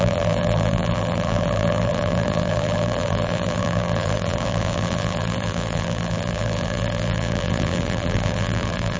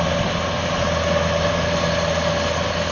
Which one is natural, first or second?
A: second